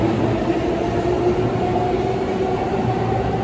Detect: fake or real real